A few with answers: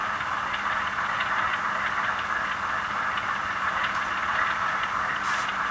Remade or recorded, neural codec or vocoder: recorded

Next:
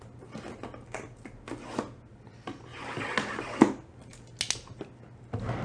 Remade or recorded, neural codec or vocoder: recorded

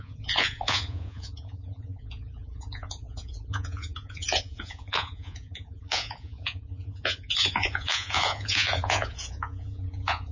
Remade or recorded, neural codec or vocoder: remade, vocoder, Vocos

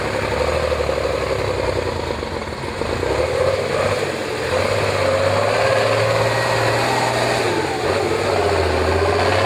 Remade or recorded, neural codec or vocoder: recorded